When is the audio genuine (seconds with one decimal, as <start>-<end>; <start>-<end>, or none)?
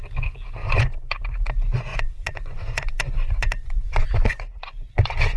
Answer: 0.0-0.6; 1.2-1.9